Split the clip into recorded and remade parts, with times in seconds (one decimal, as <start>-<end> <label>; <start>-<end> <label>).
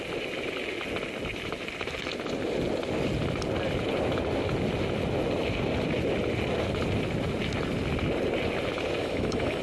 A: 0.0-9.0 recorded; 9.0-9.6 remade